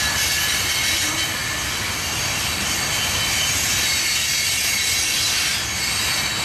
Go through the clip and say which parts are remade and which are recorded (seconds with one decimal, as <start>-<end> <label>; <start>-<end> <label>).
0.0-6.4 recorded